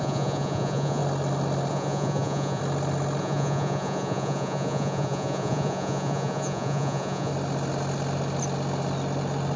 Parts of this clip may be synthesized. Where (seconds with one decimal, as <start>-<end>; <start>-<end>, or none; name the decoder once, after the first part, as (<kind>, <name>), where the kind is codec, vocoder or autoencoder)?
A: 0.0-1.0 (vocoder, Vocos); 1.7-2.6; 3.2-7.3